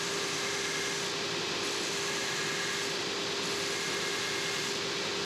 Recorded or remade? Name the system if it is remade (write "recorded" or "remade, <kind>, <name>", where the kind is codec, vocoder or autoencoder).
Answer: recorded